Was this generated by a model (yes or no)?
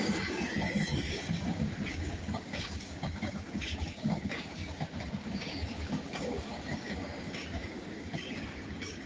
yes